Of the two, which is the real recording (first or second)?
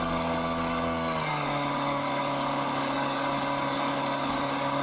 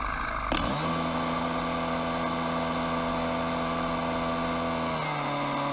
second